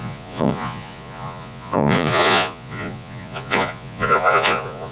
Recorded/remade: remade